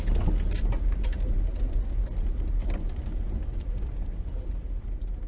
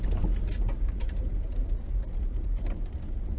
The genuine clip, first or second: first